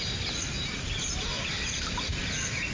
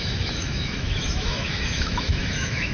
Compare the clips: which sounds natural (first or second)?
first